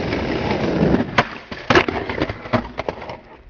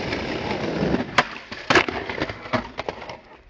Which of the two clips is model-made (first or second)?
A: second